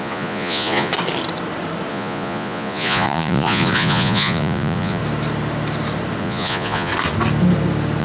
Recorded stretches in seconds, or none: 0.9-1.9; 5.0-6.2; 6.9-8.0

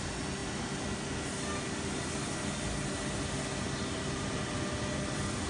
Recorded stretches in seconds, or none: 0.0-5.5